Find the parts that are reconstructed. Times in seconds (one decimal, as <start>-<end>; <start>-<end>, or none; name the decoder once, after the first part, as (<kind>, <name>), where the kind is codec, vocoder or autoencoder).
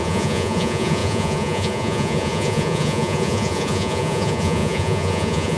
0.0-5.6 (vocoder, Vocos)